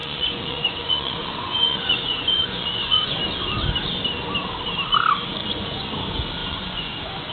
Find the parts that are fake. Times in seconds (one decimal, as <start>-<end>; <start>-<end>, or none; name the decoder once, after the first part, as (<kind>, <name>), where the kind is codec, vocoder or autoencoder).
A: 0.0-3.2 (vocoder, Vocos); 5.4-5.9; 6.4-7.3